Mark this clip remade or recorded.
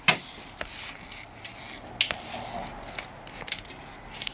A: recorded